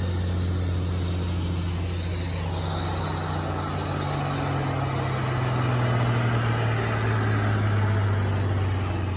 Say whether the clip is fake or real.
real